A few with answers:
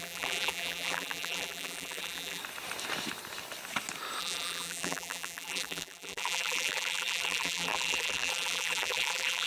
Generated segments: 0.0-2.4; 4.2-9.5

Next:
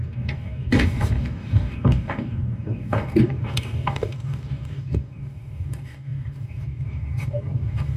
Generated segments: 0.0-8.0